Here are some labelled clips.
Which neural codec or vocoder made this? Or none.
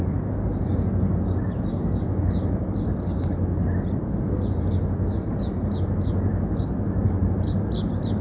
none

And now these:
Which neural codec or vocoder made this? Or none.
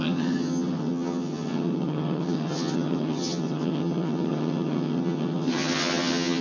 vocoder, HiFi-GAN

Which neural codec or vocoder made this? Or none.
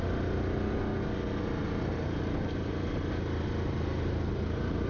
none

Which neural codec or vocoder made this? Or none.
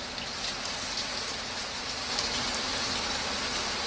none